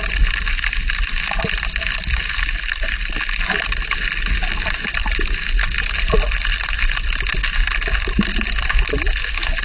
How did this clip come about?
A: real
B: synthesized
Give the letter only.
A